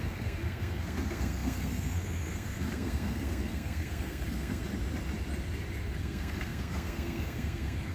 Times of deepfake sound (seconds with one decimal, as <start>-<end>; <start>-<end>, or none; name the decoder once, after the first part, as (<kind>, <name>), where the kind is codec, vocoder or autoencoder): 0.0-4.6 (codec, SNAC); 6.0-7.9